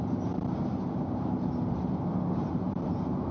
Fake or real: real